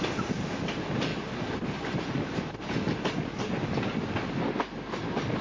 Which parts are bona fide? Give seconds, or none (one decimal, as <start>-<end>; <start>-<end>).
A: 0.0-5.4